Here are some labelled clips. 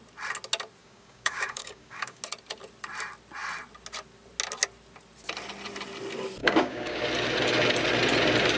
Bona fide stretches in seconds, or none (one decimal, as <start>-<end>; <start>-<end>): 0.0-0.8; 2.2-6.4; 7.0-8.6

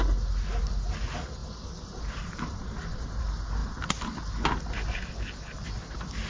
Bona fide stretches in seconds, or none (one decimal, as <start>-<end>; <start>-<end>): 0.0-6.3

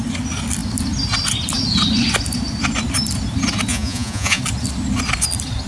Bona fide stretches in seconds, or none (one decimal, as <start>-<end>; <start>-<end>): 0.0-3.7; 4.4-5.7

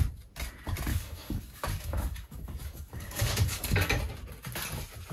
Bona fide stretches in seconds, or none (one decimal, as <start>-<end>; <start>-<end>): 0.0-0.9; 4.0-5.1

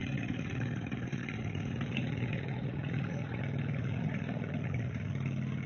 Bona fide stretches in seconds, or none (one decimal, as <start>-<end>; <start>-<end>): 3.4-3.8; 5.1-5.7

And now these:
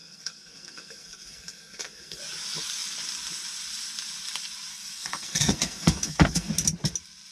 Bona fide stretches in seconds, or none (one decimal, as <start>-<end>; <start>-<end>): 2.2-4.7; 6.5-7.3

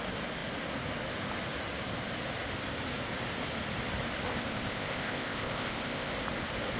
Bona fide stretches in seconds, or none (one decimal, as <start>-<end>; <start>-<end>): 0.0-4.3; 6.1-6.8

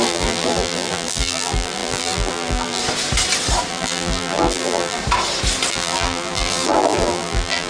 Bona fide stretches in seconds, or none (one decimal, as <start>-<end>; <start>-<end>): 2.8-3.7; 5.0-5.7